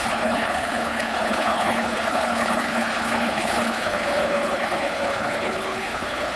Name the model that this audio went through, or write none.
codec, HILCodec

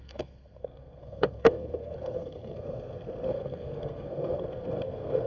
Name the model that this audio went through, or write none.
codec, SNAC